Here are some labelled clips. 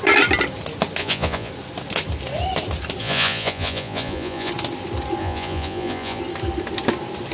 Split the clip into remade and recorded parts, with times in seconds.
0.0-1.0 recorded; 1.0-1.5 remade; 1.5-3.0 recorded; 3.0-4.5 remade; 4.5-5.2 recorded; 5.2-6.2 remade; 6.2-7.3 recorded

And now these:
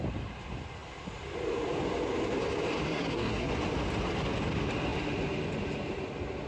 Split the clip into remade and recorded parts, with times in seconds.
0.0-2.9 recorded; 2.9-3.5 remade; 3.5-6.5 recorded

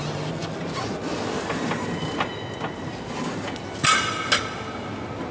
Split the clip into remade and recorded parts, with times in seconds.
0.0-5.3 recorded

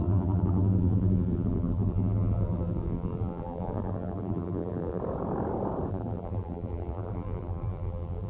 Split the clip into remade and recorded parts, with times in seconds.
0.0-5.0 remade; 5.0-5.9 recorded; 5.9-8.3 remade

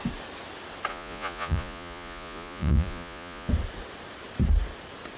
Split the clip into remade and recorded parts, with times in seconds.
0.0-0.9 recorded; 0.9-3.5 remade; 3.5-5.2 recorded

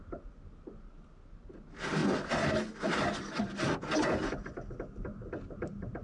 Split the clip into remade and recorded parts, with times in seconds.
0.0-6.0 recorded

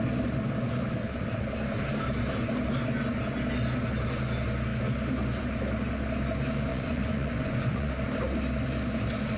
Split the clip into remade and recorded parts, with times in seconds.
0.0-6.7 recorded; 6.7-7.9 remade; 7.9-9.4 recorded

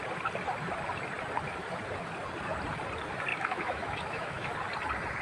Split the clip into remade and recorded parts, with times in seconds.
0.0-3.3 recorded; 3.3-4.5 remade; 4.5-5.2 recorded